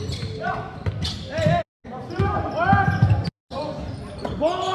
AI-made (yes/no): no